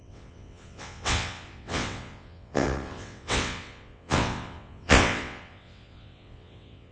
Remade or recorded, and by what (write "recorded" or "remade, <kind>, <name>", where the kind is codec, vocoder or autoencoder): remade, vocoder, WaveNeXt